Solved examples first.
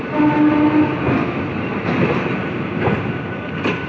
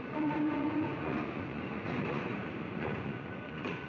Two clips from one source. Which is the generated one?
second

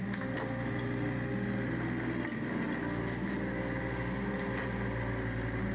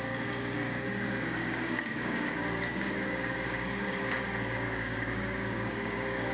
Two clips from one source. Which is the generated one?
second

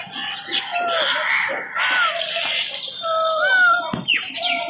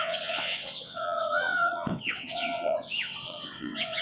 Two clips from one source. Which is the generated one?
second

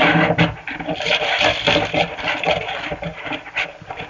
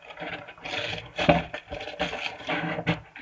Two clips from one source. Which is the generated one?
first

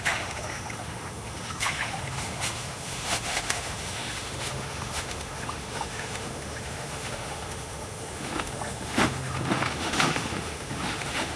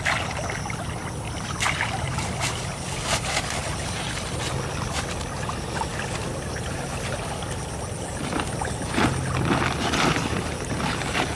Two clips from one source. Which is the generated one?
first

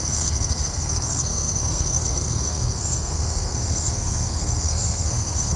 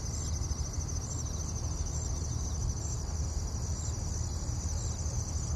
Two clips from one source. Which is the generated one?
first